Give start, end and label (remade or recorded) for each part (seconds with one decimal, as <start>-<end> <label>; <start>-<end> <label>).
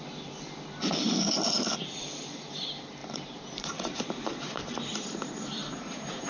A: 0.0-3.0 recorded; 3.0-6.3 remade